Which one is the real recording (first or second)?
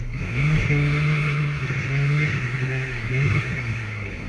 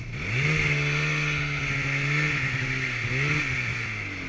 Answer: second